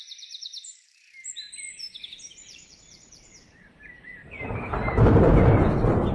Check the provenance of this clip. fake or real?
fake